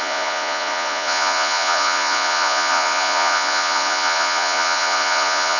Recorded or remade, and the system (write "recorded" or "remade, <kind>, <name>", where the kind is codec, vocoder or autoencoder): remade, vocoder, Vocos